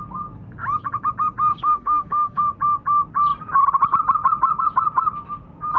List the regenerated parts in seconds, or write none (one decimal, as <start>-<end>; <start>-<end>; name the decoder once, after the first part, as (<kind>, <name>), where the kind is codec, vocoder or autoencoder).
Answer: 1.5-2.4 (autoencoder, DAC-VAE)